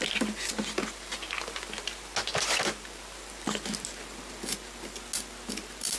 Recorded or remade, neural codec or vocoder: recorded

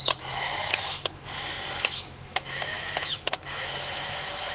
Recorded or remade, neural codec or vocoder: remade, autoencoder, DAC-VAE